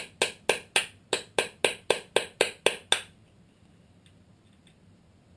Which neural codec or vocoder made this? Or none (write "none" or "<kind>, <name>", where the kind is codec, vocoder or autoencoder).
none